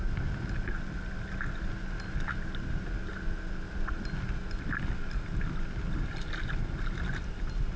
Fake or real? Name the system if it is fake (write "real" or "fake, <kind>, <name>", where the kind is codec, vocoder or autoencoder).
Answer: real